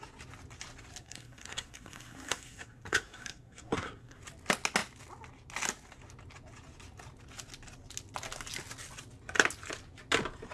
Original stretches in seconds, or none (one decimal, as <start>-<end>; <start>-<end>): 0.0-1.0; 4.2-10.5